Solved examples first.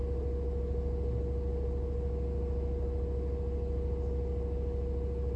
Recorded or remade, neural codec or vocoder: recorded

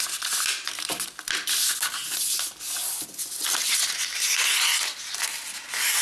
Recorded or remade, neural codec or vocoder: recorded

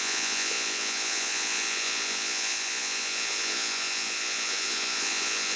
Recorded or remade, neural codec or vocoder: remade, vocoder, Vocos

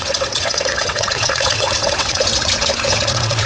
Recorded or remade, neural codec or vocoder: remade, vocoder, WaveNeXt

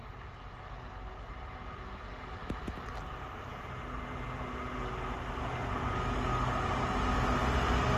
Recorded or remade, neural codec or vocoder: recorded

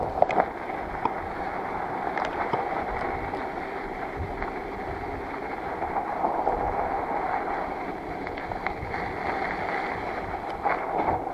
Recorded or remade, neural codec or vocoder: recorded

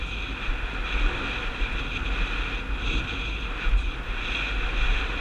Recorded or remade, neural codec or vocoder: recorded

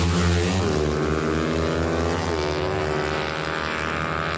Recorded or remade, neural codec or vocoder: recorded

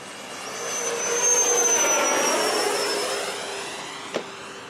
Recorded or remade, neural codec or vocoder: recorded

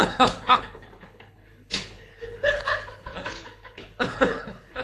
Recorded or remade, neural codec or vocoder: remade, codec, HILCodec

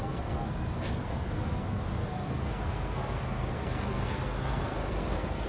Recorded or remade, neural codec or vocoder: remade, codec, SNAC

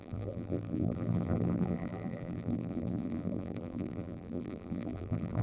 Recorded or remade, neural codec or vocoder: remade, vocoder, BigVGAN v2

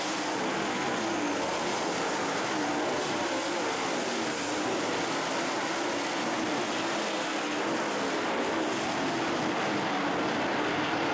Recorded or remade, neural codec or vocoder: recorded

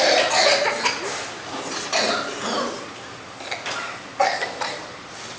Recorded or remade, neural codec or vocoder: recorded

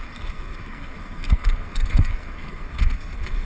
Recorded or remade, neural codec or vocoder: remade, codec, SNAC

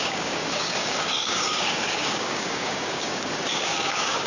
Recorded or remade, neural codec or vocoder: remade, codec, DAC